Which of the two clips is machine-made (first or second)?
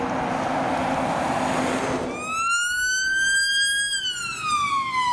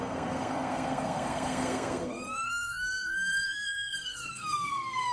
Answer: second